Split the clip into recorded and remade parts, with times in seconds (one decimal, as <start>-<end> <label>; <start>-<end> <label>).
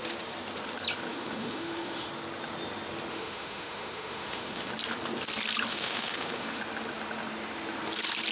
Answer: 0.0-1.1 recorded; 1.1-2.1 remade; 2.1-3.1 recorded; 3.1-4.7 remade; 4.7-5.7 recorded; 5.7-6.6 remade; 6.6-8.3 recorded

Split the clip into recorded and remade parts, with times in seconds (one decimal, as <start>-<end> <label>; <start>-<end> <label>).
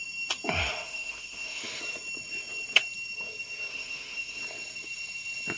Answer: 0.0-0.6 recorded; 0.6-1.8 remade; 1.8-3.7 recorded; 3.7-4.4 remade; 4.4-5.6 recorded